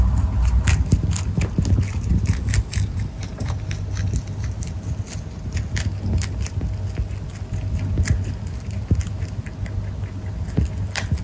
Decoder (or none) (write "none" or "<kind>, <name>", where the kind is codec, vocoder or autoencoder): none